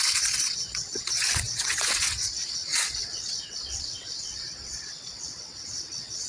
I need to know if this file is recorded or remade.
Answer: remade